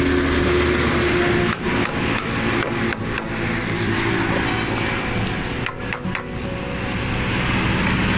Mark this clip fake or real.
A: real